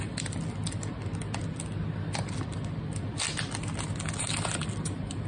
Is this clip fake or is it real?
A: real